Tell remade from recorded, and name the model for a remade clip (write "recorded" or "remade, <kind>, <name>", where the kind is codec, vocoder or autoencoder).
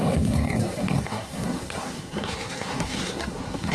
remade, codec, SNAC